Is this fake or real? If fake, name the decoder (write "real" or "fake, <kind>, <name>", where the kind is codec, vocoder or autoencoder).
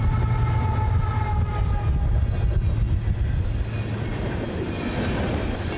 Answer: real